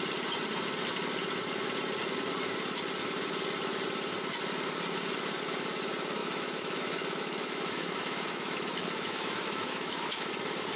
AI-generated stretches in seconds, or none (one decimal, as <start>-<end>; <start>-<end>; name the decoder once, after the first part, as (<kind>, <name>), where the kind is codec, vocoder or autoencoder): 6.2-10.3 (autoencoder, DAC-VAE)